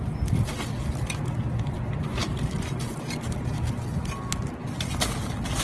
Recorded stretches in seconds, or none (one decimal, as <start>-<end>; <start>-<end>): 0.0-5.6